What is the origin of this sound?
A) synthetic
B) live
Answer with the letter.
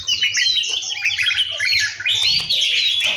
B